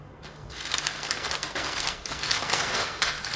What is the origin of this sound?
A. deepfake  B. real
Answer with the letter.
A